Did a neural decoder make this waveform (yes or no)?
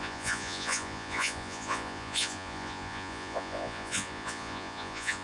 yes